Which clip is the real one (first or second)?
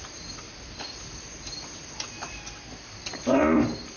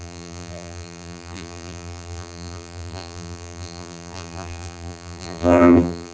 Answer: first